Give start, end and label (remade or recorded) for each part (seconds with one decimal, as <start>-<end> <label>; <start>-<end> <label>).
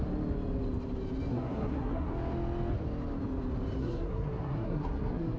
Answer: 0.0-1.3 recorded; 1.3-2.1 remade; 2.1-3.8 recorded; 3.8-5.4 remade